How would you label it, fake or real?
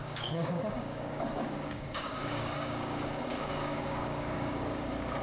fake